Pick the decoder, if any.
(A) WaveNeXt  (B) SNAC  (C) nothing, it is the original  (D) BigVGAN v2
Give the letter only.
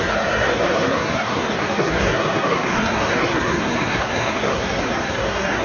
B